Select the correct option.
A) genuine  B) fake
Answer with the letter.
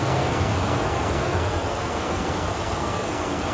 B